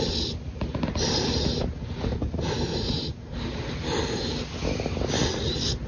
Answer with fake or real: real